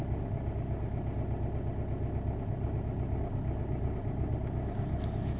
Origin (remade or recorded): recorded